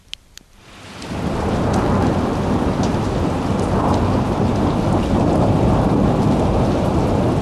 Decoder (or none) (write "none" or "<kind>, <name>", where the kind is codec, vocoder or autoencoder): none